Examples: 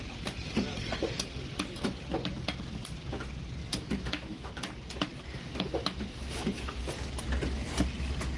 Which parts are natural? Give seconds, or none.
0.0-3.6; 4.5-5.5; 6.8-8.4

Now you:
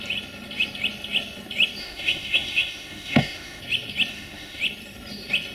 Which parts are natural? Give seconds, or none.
0.0-1.8; 3.6-4.1; 4.6-5.5

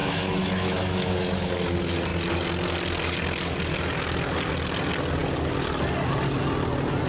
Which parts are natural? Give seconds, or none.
1.5-7.1

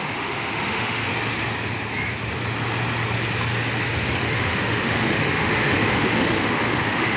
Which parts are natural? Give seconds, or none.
1.1-4.2

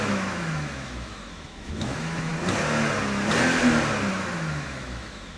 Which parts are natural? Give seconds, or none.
2.3-4.1

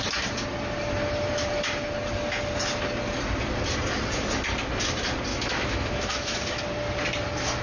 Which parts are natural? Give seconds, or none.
0.0-5.3; 6.6-7.6

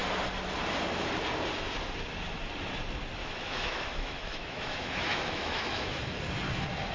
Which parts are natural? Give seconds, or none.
0.0-3.2; 6.0-6.9

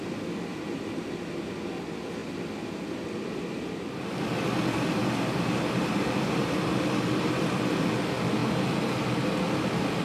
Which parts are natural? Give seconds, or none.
0.0-10.0